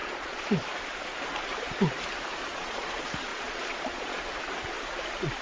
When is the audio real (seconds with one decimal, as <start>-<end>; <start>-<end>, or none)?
0.5-2.4; 2.9-3.3; 4.2-5.4